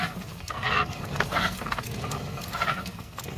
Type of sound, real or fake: fake